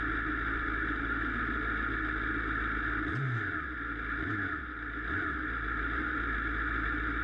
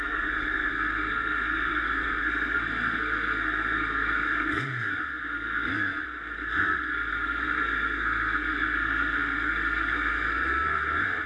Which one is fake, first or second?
second